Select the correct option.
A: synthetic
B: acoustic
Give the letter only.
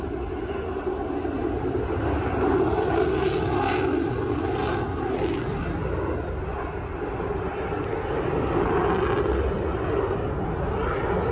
B